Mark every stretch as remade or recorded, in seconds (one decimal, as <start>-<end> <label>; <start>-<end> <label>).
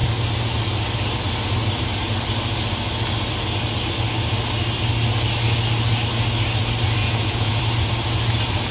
0.0-7.0 recorded; 7.0-7.6 remade; 7.6-8.7 recorded